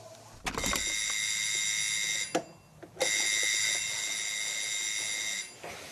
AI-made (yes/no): no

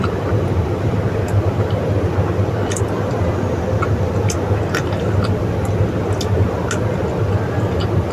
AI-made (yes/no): no